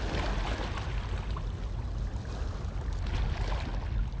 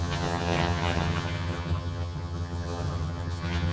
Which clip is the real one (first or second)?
first